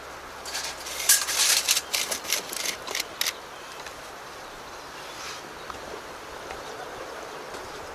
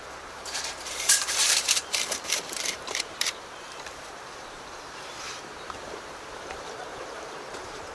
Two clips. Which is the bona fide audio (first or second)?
first